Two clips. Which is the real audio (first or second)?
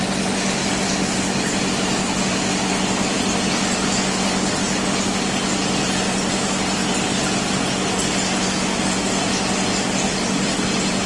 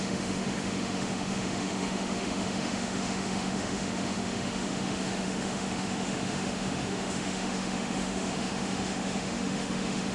first